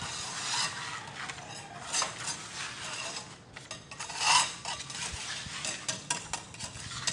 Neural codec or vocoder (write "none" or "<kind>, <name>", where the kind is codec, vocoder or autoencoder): none